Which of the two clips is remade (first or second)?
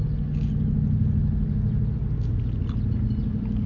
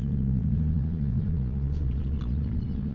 second